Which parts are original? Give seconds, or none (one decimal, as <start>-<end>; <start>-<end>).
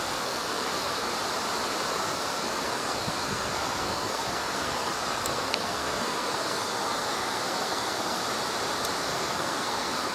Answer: 1.1-1.9; 8.2-9.0